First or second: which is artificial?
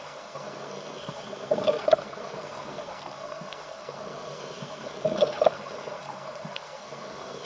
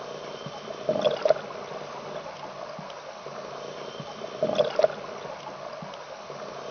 first